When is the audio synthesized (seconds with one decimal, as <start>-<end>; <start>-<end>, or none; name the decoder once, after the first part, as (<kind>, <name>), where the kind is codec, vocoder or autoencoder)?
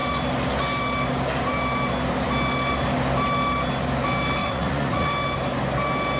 4.4-5.1 (vocoder, Vocos)